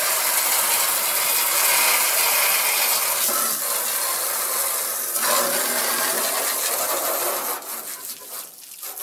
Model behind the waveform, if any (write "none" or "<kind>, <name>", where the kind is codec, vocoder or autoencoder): none